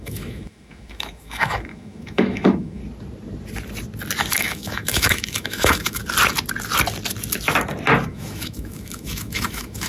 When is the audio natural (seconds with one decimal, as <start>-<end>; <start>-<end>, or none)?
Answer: 2.8-4.3; 6.0-8.1